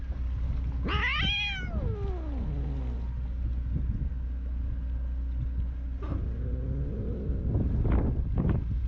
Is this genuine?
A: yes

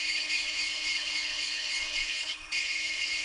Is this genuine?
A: no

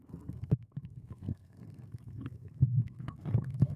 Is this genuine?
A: no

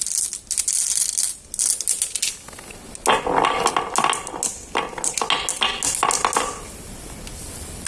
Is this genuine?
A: yes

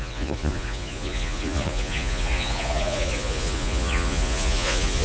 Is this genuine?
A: no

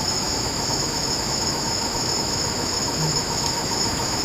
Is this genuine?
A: no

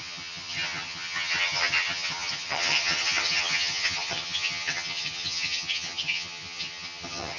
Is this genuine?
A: no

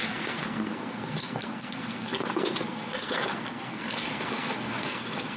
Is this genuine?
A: no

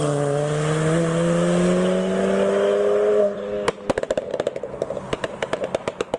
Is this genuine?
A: yes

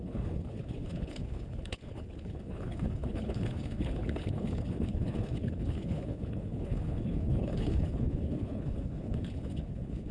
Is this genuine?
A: no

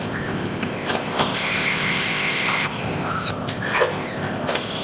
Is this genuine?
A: no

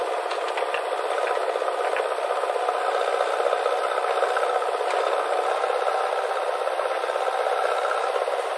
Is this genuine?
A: yes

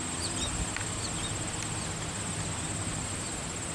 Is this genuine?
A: yes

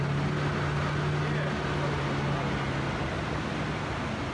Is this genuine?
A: yes